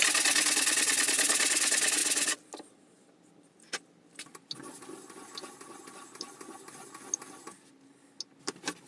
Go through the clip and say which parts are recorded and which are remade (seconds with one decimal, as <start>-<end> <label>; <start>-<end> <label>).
0.0-8.9 recorded

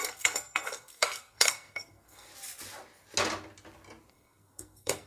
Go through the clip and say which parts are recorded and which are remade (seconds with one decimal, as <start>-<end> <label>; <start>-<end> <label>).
0.0-2.3 remade; 2.3-4.1 recorded; 4.1-5.1 remade

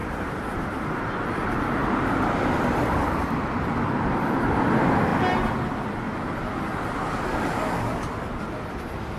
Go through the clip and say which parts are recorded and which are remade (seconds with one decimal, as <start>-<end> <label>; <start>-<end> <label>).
0.0-0.7 remade; 0.7-9.2 recorded